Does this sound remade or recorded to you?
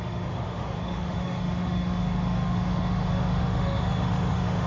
remade